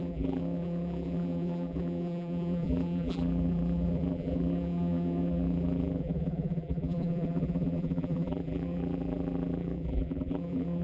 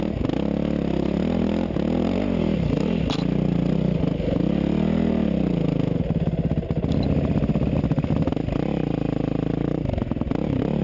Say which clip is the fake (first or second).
first